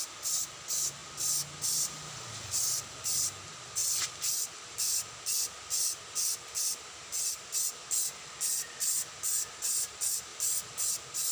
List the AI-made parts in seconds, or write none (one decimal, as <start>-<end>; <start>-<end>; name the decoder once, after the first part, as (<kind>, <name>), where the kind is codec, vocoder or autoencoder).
none